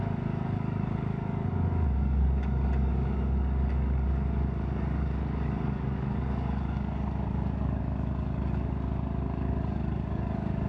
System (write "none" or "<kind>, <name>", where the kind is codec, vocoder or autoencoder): codec, DAC